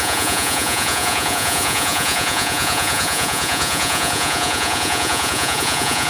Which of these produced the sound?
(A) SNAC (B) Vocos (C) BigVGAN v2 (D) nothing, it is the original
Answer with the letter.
B